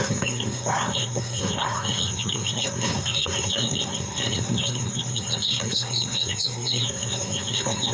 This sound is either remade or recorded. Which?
remade